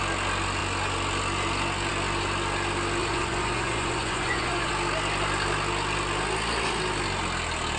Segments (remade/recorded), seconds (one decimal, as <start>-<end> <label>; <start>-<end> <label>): 0.0-3.0 recorded; 3.0-4.7 remade; 4.7-7.8 recorded